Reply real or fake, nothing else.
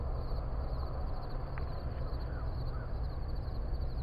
real